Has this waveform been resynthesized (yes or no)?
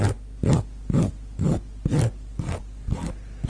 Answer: no